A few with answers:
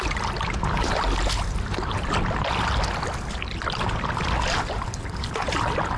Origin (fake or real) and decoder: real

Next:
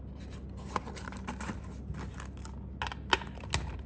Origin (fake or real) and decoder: real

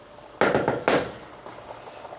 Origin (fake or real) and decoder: real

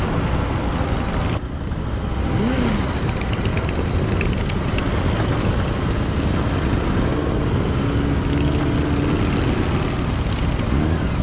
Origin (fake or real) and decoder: real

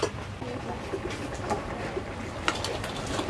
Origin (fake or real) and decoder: real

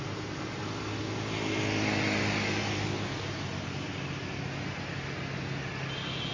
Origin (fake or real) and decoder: real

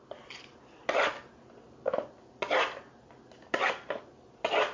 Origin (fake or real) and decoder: real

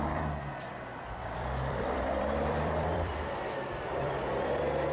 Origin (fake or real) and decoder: fake, vocoder, BigVGAN v2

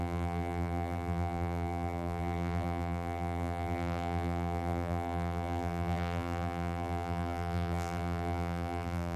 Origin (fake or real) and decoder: fake, vocoder, BigVGAN v2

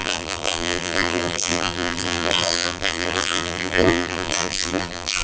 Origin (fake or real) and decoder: fake, vocoder, BigVGAN v2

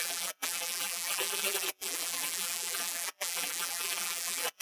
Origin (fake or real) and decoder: fake, vocoder, BigVGAN v2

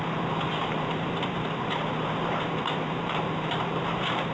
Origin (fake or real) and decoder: fake, vocoder, BigVGAN v2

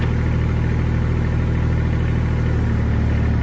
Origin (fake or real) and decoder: real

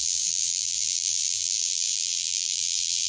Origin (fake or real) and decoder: fake, vocoder, BigVGAN v2